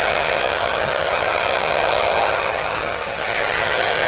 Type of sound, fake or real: fake